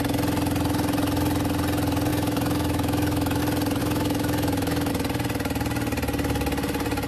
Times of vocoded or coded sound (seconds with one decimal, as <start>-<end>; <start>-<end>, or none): 2.1-3.4; 3.8-4.9